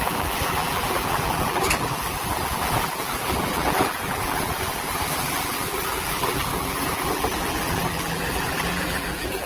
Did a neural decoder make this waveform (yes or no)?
yes